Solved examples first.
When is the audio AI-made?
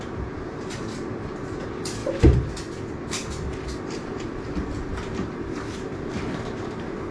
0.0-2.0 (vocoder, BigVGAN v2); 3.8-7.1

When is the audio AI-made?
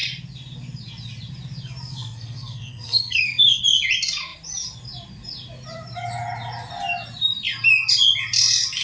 1.9-3.6 (codec, SNAC)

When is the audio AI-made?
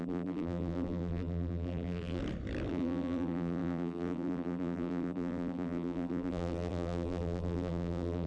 0.0-2.2 (vocoder, BigVGAN v2); 2.7-8.3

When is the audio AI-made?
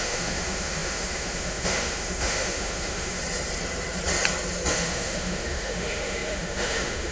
0.0-3.2 (autoencoder, DAC-VAE); 4.7-7.1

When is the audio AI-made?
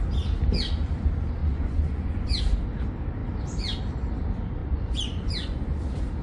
1.4-2.4 (vocoder, Vocos); 4.6-5.8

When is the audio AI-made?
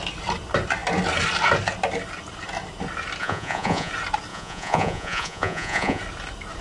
3.2-3.9 (vocoder, Vocos); 4.3-6.0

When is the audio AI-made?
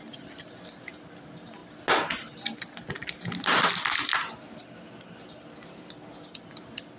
none